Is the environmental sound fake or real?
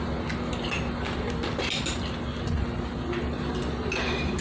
real